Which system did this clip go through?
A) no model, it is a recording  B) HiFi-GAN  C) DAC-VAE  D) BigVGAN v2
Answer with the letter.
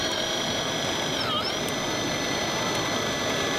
A